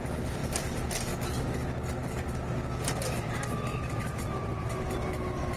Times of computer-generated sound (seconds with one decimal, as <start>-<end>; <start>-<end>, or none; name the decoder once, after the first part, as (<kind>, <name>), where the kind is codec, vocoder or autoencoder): 0.4-1.4 (vocoder, BigVGAN v2); 3.7-4.7